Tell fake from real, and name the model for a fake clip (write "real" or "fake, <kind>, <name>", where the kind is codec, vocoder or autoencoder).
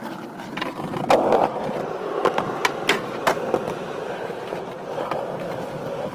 real